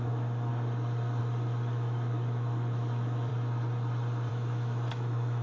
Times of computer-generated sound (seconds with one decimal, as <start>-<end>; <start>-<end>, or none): 0.0-0.5; 1.2-3.3; 4.3-5.4